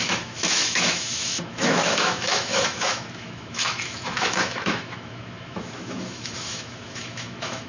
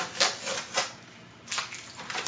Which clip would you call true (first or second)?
second